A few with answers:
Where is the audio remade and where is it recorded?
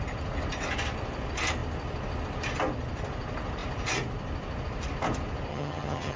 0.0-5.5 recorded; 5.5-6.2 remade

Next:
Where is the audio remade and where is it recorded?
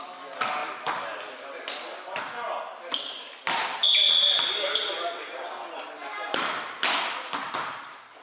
0.0-8.2 recorded